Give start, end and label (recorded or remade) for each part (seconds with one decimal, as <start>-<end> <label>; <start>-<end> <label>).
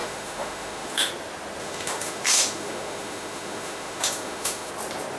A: 0.0-1.1 remade; 1.1-1.6 recorded; 1.6-4.7 remade; 4.7-5.2 recorded